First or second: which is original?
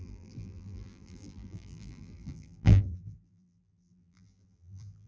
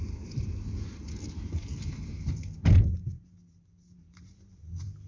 second